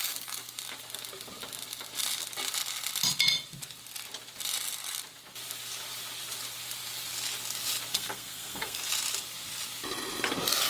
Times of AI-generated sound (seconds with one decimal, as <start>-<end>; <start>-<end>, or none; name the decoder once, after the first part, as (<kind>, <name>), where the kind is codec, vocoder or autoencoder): 7.9-8.9 (codec, SNAC)